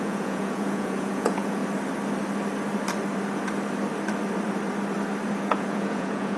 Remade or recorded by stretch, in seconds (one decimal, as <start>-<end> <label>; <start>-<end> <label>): 0.0-1.6 remade; 1.6-5.4 recorded; 5.4-6.4 remade